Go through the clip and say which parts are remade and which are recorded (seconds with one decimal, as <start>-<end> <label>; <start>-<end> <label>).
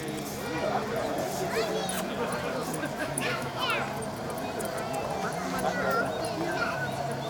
0.0-3.0 recorded; 3.0-3.6 remade; 3.6-7.3 recorded